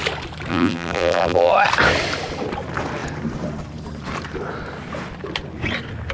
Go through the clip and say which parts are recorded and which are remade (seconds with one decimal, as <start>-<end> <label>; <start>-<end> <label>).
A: 0.0-0.5 recorded; 0.5-1.5 remade; 1.5-6.1 recorded